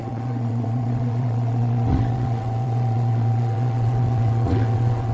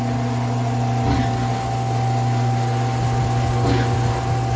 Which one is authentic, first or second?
second